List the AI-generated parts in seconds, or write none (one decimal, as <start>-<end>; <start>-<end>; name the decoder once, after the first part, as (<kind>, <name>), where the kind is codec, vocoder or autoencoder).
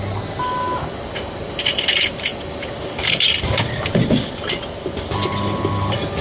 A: none